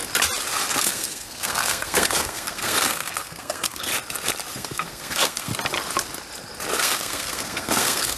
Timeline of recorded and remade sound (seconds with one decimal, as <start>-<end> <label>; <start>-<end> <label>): 0.0-0.7 recorded; 0.7-3.9 remade; 3.9-4.5 recorded; 4.5-5.5 remade; 5.5-6.8 recorded; 6.8-8.2 remade